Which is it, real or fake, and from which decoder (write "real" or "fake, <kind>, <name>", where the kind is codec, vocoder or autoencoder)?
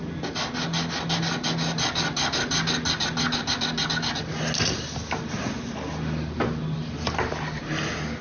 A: real